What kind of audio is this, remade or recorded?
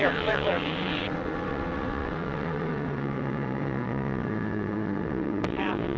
remade